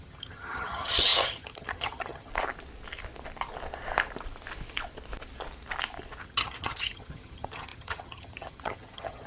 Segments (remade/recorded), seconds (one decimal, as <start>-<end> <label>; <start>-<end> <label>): 0.0-2.3 remade; 2.3-6.2 recorded; 6.2-9.3 remade